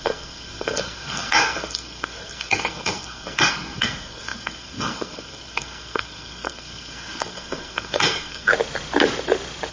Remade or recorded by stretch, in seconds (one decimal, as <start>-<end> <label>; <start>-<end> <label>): 0.0-8.5 remade; 8.5-9.7 recorded